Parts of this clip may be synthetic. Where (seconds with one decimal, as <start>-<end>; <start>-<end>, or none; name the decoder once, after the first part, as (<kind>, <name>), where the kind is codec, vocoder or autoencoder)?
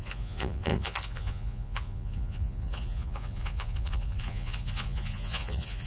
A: 0.0-5.9 (vocoder, Vocos)